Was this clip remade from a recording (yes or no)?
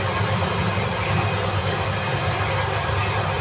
no